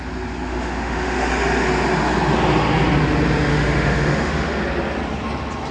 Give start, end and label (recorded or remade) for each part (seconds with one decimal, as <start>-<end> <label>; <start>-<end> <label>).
0.0-0.5 recorded; 0.5-1.3 remade; 1.3-3.5 recorded; 3.5-4.6 remade; 4.6-5.7 recorded